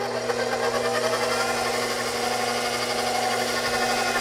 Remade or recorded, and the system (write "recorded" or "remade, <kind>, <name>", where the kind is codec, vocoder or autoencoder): recorded